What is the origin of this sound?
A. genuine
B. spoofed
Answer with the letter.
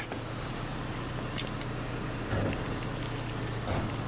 A